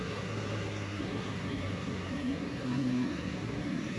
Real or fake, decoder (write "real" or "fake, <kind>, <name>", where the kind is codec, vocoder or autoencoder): fake, codec, SNAC